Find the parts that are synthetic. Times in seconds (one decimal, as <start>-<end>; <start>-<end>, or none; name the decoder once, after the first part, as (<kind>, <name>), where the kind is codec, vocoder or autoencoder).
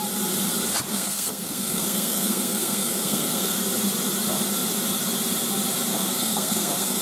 0.9-3.6 (codec, SNAC); 5.9-7.0